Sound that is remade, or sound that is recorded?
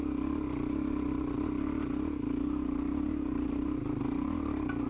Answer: recorded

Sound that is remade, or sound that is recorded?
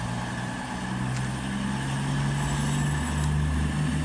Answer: recorded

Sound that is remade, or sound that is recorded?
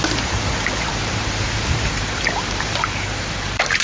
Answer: remade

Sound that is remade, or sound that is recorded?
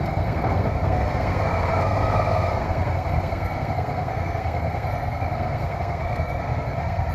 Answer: remade